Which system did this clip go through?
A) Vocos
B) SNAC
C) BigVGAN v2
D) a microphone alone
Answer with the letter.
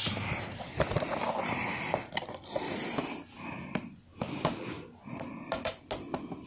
D